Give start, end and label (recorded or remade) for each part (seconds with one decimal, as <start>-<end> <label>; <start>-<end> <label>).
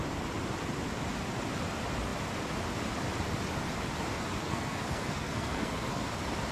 0.0-4.4 recorded; 4.4-6.0 remade; 6.0-6.5 recorded